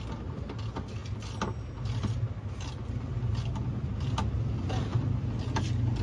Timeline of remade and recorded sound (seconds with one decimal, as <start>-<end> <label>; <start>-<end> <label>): 0.0-6.0 recorded